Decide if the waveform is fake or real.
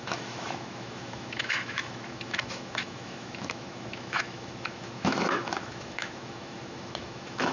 fake